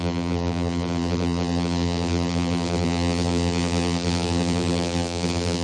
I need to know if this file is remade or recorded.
remade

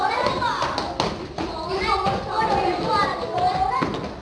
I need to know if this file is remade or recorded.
recorded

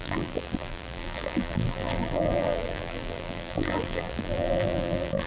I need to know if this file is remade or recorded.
remade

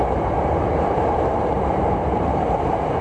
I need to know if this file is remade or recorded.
remade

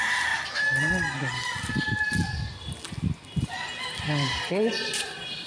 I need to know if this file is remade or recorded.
recorded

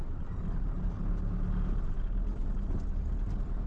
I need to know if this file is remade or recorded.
recorded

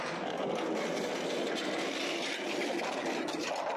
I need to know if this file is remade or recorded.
recorded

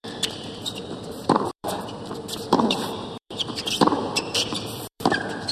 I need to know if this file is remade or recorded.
remade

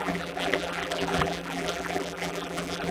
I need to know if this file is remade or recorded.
remade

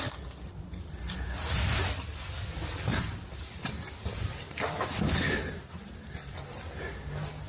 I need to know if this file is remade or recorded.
recorded